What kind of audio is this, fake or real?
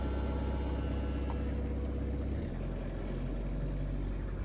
real